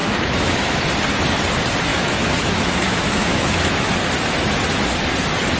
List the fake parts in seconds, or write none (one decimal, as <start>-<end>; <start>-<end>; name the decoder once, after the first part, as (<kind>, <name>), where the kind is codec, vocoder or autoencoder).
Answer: 0.0-0.8 (autoencoder, DAC-VAE); 1.9-3.9